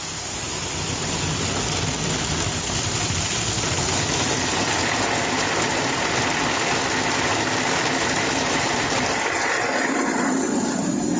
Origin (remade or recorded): recorded